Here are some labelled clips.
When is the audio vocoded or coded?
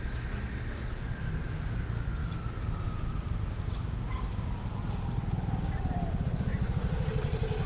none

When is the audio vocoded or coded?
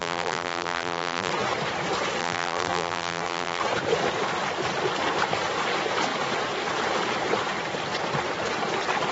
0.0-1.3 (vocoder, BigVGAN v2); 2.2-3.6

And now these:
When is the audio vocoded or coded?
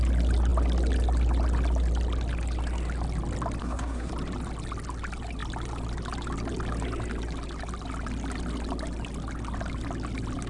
3.6-4.1 (codec, SNAC)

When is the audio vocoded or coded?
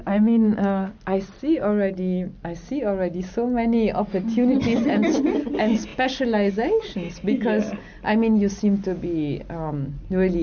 none